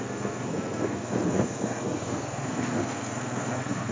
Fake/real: fake